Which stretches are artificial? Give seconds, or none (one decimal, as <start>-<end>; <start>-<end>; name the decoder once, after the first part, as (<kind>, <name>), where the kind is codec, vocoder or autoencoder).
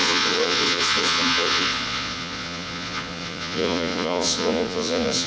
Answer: 0.0-5.3 (vocoder, Vocos)